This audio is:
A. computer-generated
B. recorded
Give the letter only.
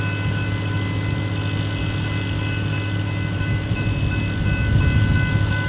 B